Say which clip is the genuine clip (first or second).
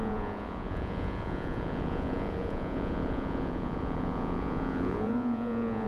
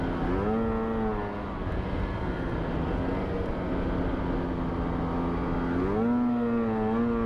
second